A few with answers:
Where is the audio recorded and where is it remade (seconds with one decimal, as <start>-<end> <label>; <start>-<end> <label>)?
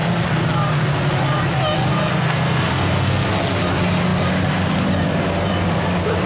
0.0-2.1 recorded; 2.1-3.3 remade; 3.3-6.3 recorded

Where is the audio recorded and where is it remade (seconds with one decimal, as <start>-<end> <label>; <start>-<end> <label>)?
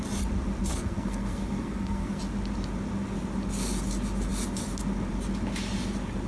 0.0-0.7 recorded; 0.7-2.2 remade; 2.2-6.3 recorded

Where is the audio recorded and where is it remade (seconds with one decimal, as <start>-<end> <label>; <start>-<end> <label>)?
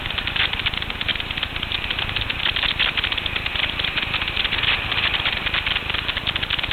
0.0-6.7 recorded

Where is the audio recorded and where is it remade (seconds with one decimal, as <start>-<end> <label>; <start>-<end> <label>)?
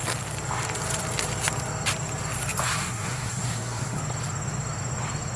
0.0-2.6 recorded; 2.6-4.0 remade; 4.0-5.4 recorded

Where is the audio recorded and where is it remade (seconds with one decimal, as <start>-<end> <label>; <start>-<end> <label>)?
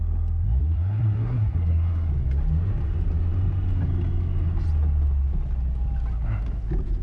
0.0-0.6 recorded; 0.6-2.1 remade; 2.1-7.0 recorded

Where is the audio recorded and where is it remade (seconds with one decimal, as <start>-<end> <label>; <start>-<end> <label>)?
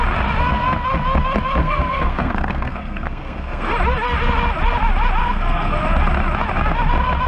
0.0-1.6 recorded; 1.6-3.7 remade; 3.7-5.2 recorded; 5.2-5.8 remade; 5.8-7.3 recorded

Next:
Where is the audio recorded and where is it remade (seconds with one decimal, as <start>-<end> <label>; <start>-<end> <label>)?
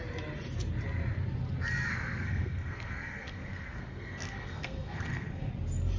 0.0-1.9 recorded; 1.9-5.5 remade; 5.5-6.0 recorded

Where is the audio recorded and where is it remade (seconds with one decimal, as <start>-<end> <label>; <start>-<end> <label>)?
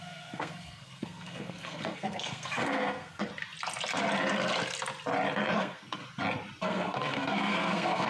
0.0-3.2 remade; 3.2-5.6 recorded; 5.6-6.0 remade; 6.0-6.6 recorded; 6.6-8.1 remade